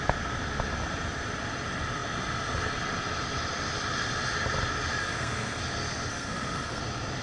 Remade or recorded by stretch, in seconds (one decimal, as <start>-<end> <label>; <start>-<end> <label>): 0.0-5.0 recorded; 5.0-5.6 remade; 5.6-6.1 recorded; 6.1-6.8 remade; 6.8-7.2 recorded